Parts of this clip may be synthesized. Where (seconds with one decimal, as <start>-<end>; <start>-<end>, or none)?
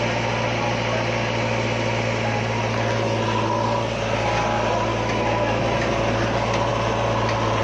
none